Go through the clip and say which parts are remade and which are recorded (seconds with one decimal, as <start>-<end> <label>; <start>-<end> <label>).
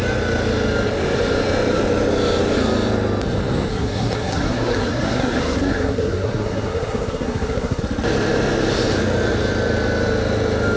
0.0-3.7 recorded; 3.7-7.8 remade; 7.8-10.8 recorded